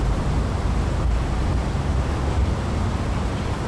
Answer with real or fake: fake